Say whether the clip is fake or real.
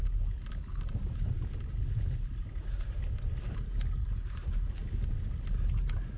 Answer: real